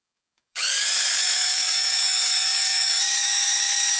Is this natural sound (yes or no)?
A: no